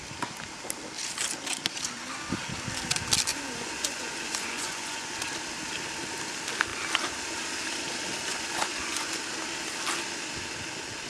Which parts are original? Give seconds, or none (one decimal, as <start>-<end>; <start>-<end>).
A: 0.0-3.3; 5.3-8.3; 9.1-11.1